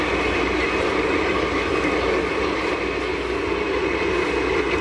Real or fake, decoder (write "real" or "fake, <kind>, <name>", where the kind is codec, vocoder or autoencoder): real